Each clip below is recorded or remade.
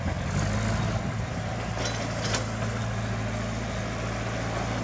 recorded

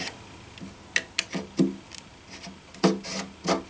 recorded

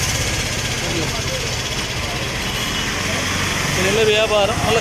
recorded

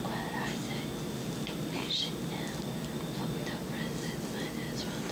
recorded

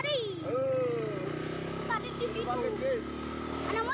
recorded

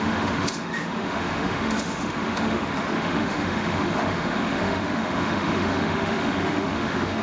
remade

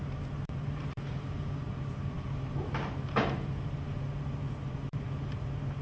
remade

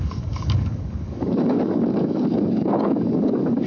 remade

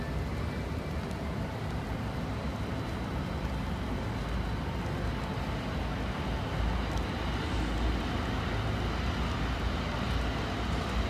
recorded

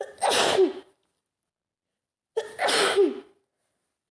recorded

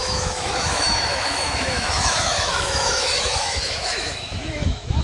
remade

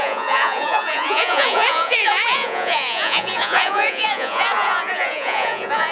remade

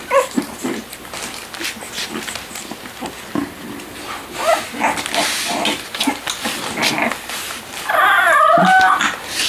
recorded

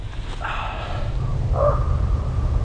recorded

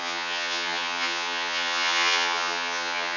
remade